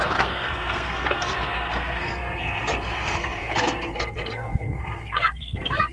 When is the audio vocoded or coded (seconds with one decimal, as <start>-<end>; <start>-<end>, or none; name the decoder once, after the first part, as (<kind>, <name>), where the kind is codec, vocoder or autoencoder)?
0.0-5.9 (codec, SNAC)